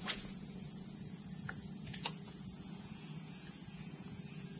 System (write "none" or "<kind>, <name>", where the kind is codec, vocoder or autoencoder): vocoder, Vocos